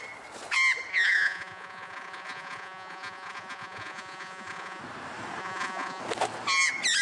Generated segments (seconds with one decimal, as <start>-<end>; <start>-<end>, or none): 0.9-4.8; 5.4-6.0